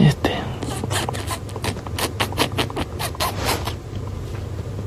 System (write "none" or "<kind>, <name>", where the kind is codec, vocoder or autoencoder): none